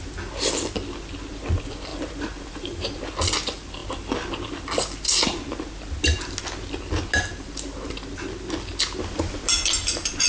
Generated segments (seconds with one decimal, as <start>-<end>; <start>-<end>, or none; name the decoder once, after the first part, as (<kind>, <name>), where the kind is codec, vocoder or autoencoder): 1.9-3.0 (vocoder, BigVGAN v2)